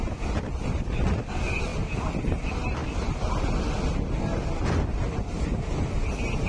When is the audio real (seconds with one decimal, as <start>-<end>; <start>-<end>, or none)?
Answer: 0.0-6.5